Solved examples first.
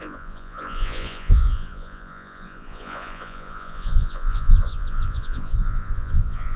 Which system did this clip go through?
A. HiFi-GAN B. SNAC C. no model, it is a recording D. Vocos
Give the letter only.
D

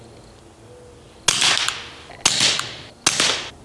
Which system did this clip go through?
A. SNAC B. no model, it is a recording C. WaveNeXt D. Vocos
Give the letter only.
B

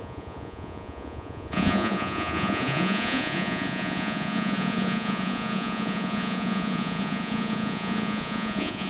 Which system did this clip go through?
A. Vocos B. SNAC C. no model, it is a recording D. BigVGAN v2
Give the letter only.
A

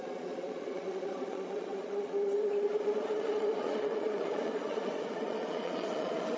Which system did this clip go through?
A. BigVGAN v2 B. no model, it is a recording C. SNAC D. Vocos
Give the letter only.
D